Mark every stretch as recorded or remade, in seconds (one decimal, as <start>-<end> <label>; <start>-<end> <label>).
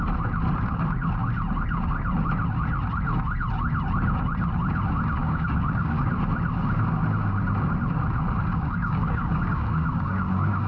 0.0-5.2 recorded; 5.2-6.0 remade; 6.0-8.5 recorded; 8.5-10.7 remade